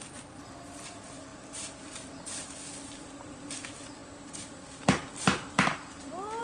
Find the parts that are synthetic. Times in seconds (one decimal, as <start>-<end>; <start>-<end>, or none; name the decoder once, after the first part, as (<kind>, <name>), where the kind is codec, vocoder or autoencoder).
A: none